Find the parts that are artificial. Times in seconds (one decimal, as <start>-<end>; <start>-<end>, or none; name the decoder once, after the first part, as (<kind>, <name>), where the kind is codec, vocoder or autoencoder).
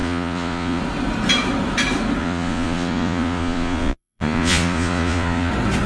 0.0-0.8 (vocoder, Vocos); 2.2-5.5